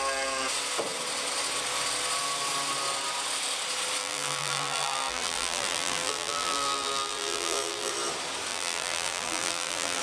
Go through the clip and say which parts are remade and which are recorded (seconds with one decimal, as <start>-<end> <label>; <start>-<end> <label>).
0.0-4.0 recorded; 4.0-7.9 remade; 7.9-8.5 recorded; 8.5-10.0 remade